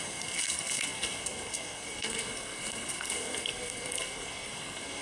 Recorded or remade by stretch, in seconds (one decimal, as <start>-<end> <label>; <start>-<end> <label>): 0.0-5.0 remade

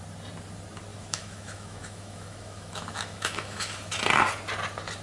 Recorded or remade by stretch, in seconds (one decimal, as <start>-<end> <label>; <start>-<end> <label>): 0.0-0.9 recorded; 0.9-3.9 remade; 3.9-5.0 recorded